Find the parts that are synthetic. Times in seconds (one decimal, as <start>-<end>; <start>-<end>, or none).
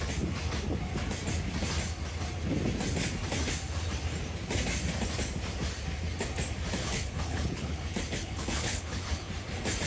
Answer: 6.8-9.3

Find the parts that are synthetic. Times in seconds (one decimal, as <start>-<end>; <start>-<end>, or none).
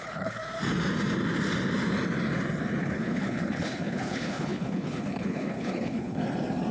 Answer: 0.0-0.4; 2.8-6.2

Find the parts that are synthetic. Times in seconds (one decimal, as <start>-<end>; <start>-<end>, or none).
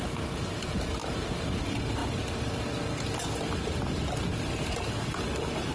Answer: none